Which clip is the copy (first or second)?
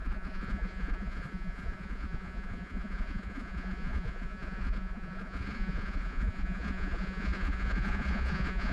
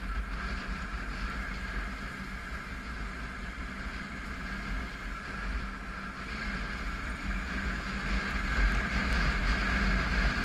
first